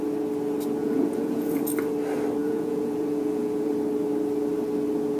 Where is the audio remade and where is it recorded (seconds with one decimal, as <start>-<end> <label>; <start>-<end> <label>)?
0.0-0.8 recorded; 0.8-1.6 remade; 1.6-2.4 recorded; 2.4-3.7 remade; 3.7-5.2 recorded